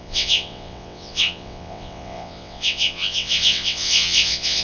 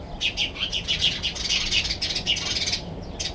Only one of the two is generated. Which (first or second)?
first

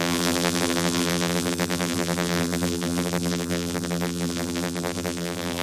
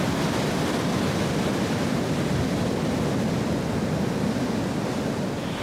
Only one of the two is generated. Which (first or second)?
first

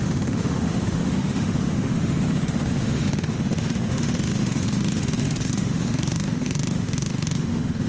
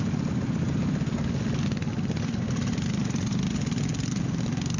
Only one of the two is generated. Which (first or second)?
first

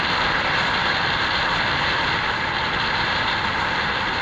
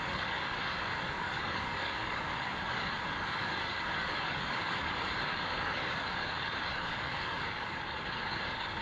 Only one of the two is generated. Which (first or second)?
second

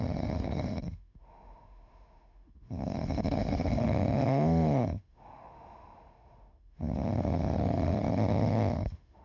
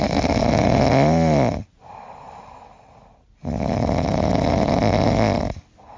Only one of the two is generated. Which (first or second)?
first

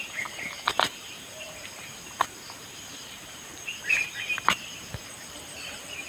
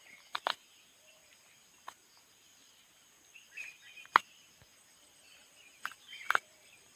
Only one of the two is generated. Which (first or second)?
first